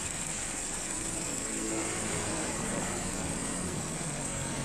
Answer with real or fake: fake